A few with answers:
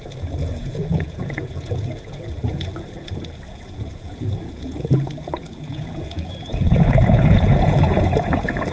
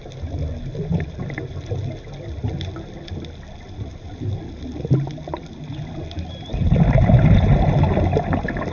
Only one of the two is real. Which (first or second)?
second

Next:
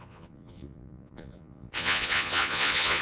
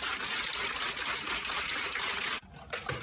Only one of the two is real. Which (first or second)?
second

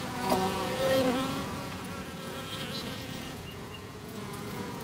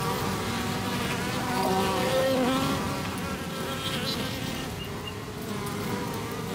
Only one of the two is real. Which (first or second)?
second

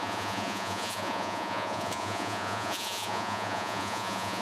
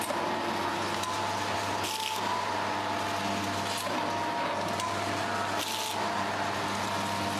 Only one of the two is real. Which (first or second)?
second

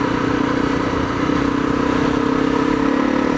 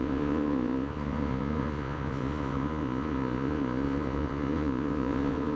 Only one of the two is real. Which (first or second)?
first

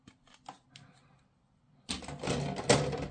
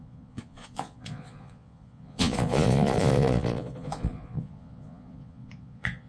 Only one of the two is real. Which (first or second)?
first